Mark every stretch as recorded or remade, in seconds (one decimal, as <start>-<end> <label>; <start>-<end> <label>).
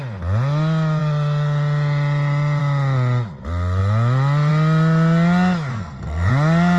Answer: 0.0-5.7 recorded; 5.7-6.3 remade; 6.3-6.8 recorded